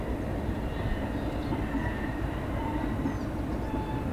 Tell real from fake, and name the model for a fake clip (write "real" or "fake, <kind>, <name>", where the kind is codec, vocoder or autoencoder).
fake, vocoder, BigVGAN v2